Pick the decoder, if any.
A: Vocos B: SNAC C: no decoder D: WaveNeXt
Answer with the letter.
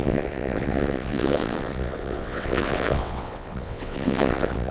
D